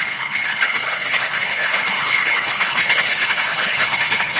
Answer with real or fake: fake